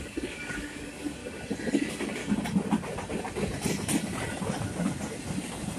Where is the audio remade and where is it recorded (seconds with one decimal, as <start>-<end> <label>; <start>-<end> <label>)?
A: 0.0-1.2 remade; 1.2-1.7 recorded; 1.7-2.2 remade; 2.2-5.8 recorded

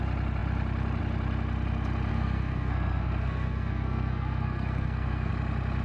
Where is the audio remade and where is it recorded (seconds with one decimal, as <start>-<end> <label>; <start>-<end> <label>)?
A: 0.0-2.1 recorded; 2.1-5.3 remade; 5.3-5.8 recorded

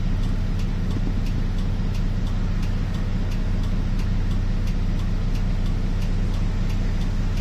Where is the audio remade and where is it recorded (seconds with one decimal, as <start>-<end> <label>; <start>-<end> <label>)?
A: 0.0-7.4 recorded

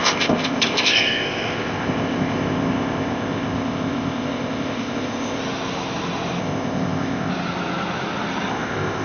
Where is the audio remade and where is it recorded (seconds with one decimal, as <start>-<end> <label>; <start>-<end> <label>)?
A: 0.0-5.4 remade; 5.4-6.4 recorded; 6.4-7.3 remade; 7.3-8.5 recorded; 8.5-9.0 remade

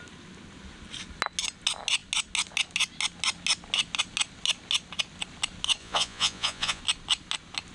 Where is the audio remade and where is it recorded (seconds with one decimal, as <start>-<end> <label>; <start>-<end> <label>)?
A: 0.0-5.8 recorded; 5.8-6.8 remade; 6.8-7.7 recorded

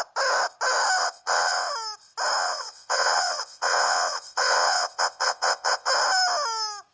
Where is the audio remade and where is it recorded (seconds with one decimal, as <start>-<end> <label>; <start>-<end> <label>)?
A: 0.0-1.0 recorded; 1.0-1.7 remade; 1.7-2.4 recorded; 2.4-5.9 remade; 5.9-6.9 recorded

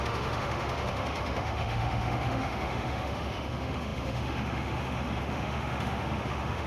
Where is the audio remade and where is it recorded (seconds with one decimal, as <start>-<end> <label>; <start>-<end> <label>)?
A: 0.0-6.7 remade

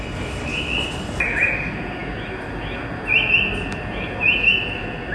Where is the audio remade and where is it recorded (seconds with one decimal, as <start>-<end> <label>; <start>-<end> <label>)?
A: 0.0-5.1 recorded